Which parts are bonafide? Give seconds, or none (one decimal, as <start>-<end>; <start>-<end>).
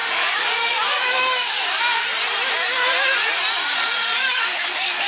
1.8-4.1